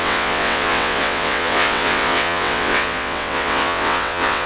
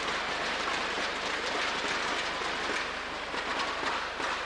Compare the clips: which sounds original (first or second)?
second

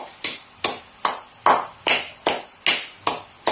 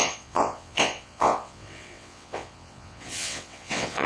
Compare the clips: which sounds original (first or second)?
first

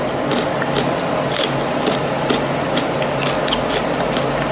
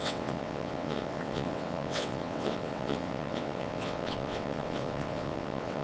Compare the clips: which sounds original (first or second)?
first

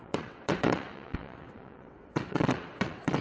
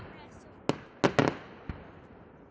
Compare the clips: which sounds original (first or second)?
second